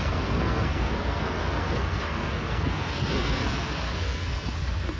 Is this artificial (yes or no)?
yes